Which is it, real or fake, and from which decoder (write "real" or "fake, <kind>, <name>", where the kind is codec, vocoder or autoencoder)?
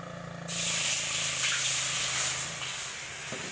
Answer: real